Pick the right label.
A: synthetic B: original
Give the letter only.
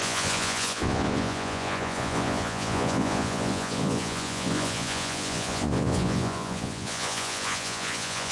A